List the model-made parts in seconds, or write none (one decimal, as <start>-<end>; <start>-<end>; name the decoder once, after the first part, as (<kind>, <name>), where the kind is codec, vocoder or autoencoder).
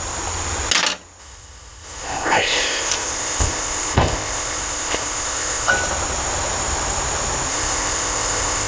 1.2-5.7 (codec, ZipCodec); 7.5-8.7